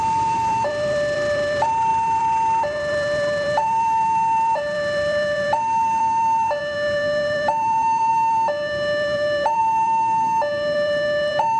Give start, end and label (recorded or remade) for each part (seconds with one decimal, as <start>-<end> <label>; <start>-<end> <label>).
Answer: 0.0-11.6 remade